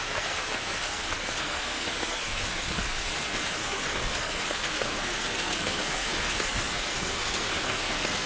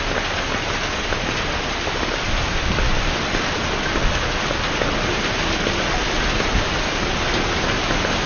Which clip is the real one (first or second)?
second